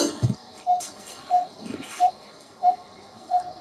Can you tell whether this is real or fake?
fake